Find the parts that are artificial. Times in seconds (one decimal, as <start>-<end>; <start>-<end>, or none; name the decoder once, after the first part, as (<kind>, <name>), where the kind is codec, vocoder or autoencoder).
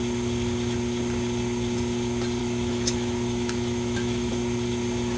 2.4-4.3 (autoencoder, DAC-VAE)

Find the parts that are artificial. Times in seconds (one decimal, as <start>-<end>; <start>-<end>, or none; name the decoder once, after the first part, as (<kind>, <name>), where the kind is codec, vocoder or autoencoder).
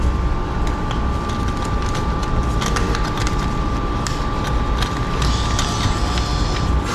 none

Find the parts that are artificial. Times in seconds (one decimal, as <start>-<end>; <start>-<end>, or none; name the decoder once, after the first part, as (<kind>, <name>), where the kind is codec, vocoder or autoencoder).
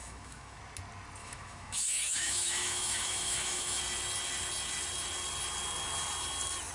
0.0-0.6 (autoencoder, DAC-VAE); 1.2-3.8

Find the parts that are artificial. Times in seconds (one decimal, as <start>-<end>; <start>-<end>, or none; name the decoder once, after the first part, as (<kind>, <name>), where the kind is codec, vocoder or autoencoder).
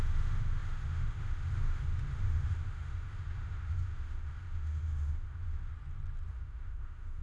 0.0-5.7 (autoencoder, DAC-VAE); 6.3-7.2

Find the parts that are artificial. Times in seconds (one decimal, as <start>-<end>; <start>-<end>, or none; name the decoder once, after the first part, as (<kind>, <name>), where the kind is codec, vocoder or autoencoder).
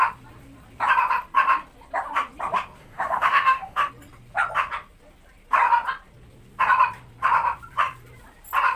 2.8-3.9 (autoencoder, DAC-VAE)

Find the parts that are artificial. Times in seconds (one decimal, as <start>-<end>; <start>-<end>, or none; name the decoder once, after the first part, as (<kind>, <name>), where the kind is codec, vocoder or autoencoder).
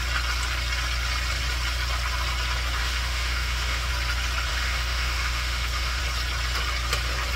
2.8-3.9 (autoencoder, DAC-VAE); 4.5-6.0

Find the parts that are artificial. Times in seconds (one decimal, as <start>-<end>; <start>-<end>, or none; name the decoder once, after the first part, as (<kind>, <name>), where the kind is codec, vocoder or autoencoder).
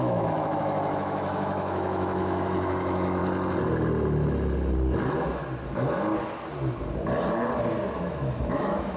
0.0-3.2 (autoencoder, DAC-VAE); 8.0-9.0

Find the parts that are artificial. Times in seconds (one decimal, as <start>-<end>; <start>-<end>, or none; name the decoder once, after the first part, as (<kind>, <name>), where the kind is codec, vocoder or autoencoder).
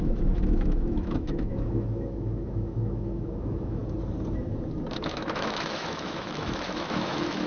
0.0-3.8 (autoencoder, DAC-VAE); 5.0-7.5